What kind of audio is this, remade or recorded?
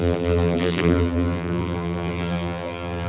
remade